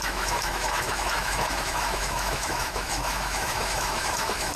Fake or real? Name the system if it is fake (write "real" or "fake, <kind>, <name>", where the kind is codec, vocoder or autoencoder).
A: fake, autoencoder, DAC-VAE